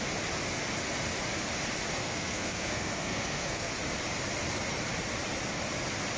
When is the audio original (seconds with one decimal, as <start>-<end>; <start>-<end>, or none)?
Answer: 0.0-2.0; 3.7-6.2